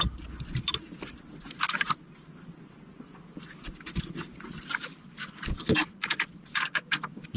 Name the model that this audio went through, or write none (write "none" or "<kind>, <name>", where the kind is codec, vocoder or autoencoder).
none